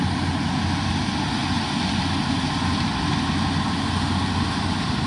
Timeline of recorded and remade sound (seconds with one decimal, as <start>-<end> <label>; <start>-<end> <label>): 0.0-5.1 recorded